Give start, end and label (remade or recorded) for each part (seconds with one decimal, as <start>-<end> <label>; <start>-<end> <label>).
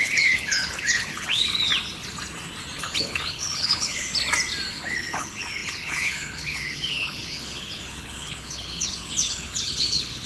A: 0.0-1.7 remade; 1.7-2.8 recorded; 2.8-4.1 remade; 4.1-4.7 recorded; 4.7-10.3 remade